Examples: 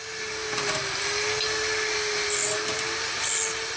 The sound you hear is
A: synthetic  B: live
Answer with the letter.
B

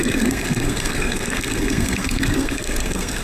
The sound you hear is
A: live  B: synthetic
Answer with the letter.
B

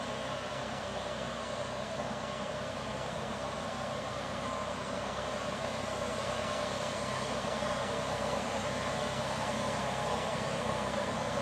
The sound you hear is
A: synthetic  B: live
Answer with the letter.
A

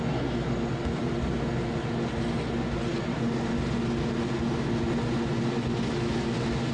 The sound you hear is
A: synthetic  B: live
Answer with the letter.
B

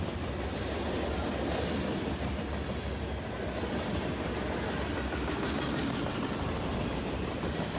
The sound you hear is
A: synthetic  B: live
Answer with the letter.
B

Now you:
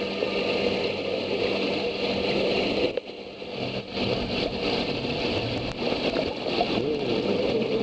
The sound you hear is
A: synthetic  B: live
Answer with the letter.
B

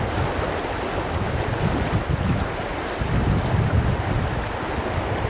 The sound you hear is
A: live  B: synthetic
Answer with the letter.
A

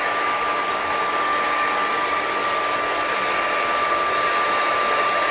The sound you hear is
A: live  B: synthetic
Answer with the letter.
A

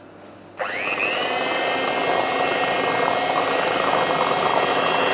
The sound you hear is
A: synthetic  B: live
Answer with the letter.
B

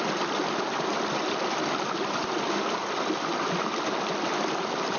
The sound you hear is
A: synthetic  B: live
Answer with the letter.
B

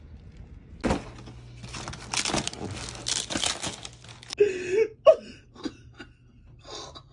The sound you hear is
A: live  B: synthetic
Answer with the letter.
A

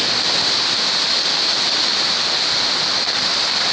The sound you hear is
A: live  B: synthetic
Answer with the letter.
A